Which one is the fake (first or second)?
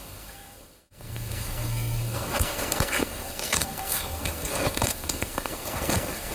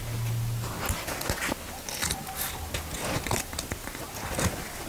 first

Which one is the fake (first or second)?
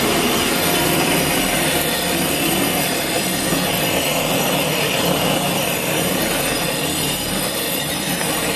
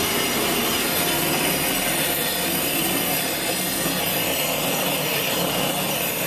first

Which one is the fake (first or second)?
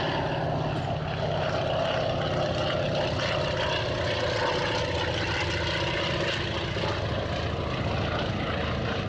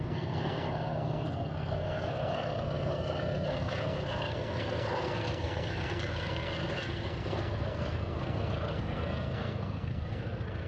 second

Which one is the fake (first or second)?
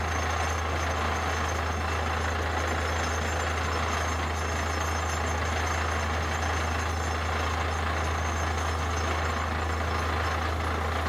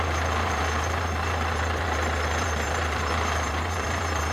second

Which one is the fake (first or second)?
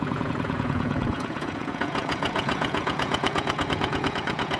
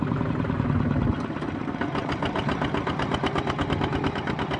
first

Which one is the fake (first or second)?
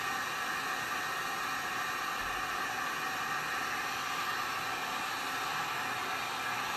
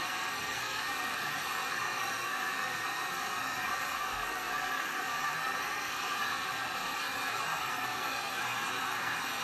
second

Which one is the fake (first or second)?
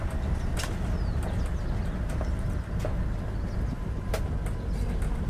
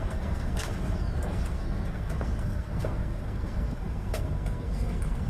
second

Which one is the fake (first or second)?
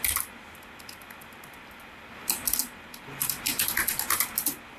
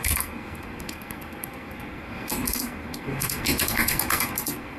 second